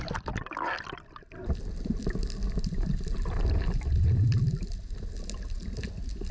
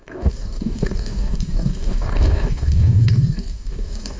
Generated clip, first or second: second